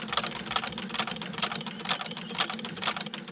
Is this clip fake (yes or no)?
no